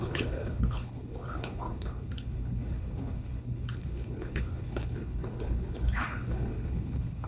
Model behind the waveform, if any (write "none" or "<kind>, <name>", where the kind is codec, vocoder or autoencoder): codec, HILCodec